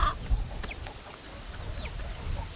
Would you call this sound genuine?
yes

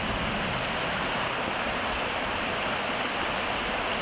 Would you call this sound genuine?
yes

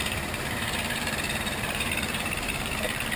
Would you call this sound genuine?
no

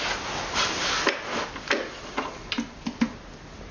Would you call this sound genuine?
yes